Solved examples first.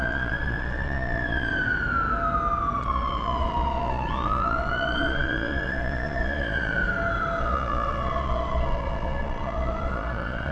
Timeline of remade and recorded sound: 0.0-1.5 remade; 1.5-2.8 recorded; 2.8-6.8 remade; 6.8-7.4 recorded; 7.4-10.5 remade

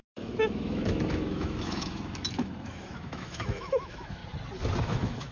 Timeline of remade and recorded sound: 0.0-4.2 remade; 4.2-4.8 recorded; 4.8-5.3 remade

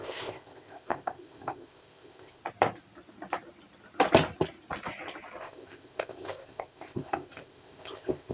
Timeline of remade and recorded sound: 0.0-2.4 remade; 2.4-5.4 recorded; 5.4-8.3 remade

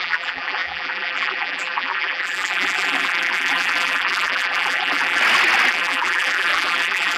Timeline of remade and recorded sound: 0.0-5.2 remade; 5.2-5.7 recorded; 5.7-7.2 remade